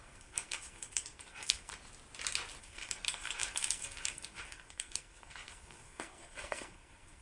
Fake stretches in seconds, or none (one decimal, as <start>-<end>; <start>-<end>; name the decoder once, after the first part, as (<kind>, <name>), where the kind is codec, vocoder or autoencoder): 0.0-1.7 (codec, SNAC); 2.6-7.2

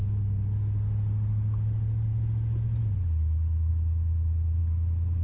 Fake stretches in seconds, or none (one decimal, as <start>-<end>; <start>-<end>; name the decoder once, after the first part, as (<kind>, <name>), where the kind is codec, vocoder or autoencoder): none

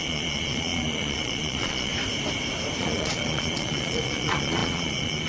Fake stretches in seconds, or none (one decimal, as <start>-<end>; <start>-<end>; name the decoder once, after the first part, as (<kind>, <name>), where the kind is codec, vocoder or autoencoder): 0.0-1.9 (vocoder, Vocos); 2.8-5.3

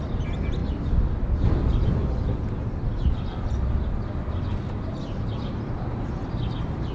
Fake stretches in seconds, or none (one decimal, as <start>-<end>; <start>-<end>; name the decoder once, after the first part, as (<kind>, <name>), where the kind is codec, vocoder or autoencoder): none

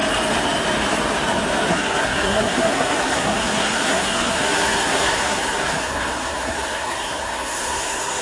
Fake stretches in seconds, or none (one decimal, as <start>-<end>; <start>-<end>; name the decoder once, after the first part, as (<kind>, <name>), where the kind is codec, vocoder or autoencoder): 1.7-8.2 (codec, SNAC)

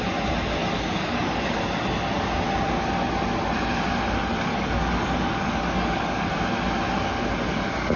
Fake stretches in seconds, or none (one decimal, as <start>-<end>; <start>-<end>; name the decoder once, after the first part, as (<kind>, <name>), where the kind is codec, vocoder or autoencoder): 0.6-1.6 (codec, DAC); 4.5-6.3

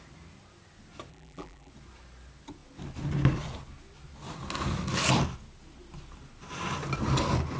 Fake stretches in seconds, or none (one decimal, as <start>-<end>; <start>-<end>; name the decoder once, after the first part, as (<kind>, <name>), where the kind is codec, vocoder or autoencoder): 1.1-1.7 (vocoder, BigVGAN v2)

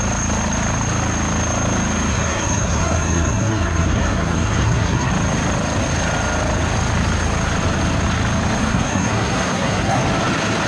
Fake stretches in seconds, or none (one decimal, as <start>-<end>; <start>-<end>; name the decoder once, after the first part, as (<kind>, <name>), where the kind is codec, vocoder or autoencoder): 2.1-5.1 (codec, SNAC); 8.6-10.0